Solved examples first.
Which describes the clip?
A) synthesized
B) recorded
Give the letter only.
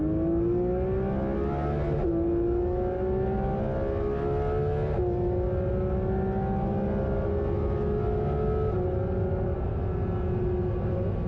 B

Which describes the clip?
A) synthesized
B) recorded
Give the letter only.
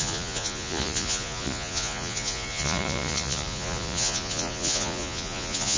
A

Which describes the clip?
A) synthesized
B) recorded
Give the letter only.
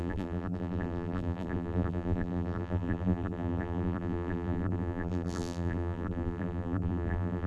A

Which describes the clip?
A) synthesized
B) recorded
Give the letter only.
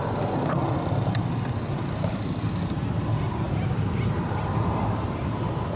B